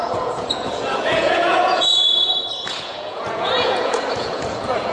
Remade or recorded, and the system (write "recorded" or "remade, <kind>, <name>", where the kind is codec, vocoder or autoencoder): remade, vocoder, Vocos